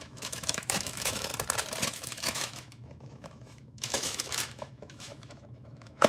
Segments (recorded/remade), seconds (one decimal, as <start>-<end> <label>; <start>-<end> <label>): 0.0-1.3 remade; 1.3-1.9 recorded; 1.9-6.1 remade